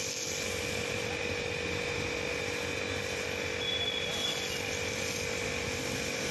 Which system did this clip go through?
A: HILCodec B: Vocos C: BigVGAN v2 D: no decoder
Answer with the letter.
D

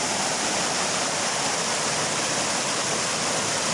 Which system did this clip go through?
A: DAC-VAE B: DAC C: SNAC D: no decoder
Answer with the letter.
D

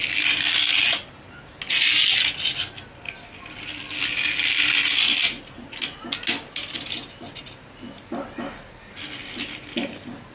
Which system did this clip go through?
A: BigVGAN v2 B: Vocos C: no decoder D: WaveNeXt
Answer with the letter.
C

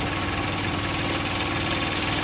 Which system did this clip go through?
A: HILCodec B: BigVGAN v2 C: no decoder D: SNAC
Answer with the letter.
C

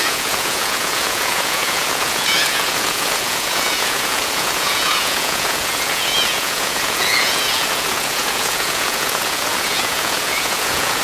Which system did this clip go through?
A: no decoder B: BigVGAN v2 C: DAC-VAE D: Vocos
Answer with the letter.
D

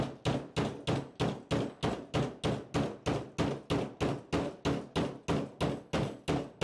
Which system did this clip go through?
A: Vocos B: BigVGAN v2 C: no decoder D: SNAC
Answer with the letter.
C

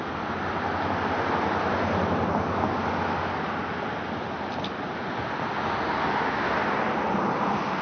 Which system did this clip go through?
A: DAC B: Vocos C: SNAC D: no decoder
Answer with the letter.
D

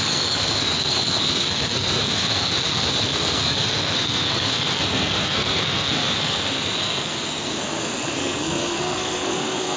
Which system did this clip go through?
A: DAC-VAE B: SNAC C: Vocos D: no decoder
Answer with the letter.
B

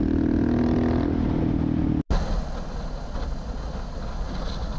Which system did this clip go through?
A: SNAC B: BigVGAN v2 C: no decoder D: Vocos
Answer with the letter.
C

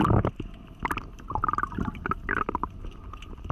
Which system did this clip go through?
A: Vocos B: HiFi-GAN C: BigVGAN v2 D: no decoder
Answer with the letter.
D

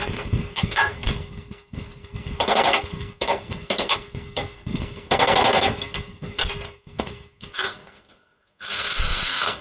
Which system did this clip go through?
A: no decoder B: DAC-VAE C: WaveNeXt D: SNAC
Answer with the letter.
D